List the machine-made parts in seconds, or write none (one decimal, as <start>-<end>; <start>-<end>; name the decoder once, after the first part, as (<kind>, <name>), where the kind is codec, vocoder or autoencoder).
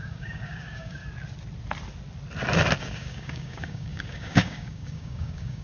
0.0-1.0 (codec, DAC); 2.8-5.6